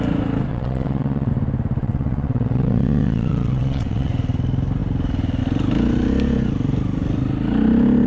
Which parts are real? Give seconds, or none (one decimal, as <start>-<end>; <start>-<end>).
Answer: 0.0-0.5; 1.3-1.8; 4.1-8.1